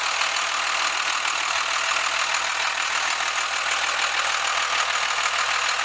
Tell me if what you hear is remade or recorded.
recorded